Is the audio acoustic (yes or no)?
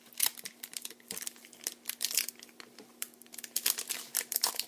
yes